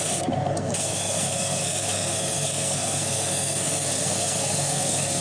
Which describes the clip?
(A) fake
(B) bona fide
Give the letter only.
A